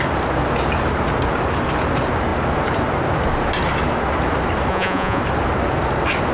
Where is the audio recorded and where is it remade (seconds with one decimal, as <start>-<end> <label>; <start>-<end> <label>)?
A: 0.0-4.7 recorded; 4.7-5.2 remade; 5.2-6.3 recorded